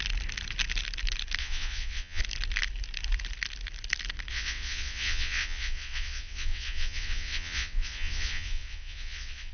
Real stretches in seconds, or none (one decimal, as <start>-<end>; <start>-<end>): 0.0-1.4; 2.2-4.3